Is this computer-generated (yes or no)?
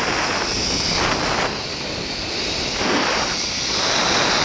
no